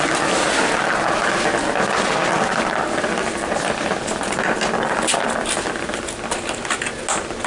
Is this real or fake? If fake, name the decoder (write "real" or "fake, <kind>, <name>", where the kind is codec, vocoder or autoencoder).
real